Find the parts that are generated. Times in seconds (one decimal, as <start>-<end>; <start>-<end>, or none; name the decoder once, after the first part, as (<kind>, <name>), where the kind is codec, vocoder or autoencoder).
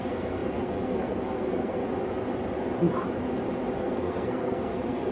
0.0-1.8 (codec, SNAC); 3.8-5.1